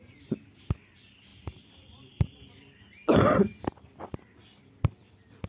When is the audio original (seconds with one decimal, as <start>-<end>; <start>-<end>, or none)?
0.0-5.5